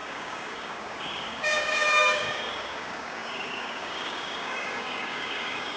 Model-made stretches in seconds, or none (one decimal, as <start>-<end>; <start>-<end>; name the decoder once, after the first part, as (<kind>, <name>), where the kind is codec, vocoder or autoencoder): 0.0-5.8 (codec, DAC)